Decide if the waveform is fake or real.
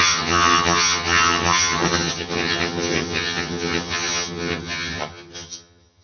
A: fake